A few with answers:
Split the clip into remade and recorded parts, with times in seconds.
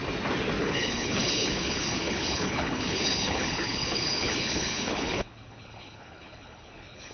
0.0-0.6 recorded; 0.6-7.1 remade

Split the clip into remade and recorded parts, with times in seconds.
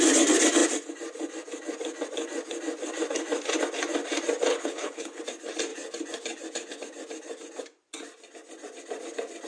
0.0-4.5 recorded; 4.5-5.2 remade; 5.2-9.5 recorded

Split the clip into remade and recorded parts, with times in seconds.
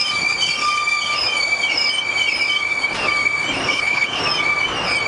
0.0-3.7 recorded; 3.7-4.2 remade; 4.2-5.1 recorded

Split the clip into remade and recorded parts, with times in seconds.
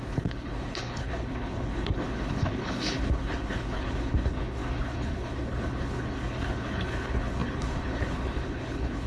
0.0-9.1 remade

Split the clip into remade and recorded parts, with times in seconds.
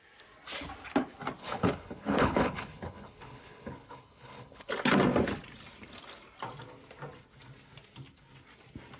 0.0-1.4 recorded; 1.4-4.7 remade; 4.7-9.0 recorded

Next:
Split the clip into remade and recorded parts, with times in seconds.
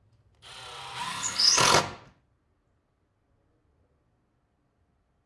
0.0-1.1 recorded; 1.1-1.8 remade; 1.8-5.3 recorded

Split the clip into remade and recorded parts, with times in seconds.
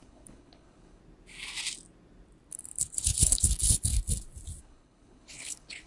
0.0-1.0 remade; 1.0-2.5 recorded; 2.5-3.9 remade; 3.9-4.6 recorded; 4.6-5.9 remade